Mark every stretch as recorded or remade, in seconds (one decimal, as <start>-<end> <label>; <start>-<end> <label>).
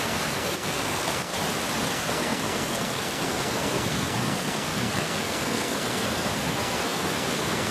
0.0-1.3 remade; 1.3-1.9 recorded; 1.9-7.7 remade